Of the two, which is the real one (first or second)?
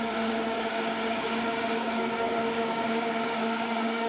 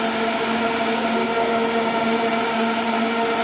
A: second